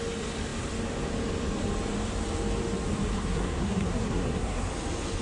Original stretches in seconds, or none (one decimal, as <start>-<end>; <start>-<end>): 0.0-3.2; 4.7-5.2